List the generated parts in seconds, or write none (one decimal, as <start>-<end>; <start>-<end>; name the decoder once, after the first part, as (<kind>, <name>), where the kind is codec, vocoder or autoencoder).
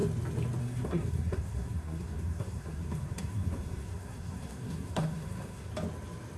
0.6-5.7 (codec, SNAC)